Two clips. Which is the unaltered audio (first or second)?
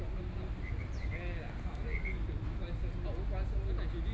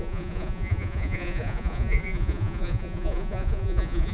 first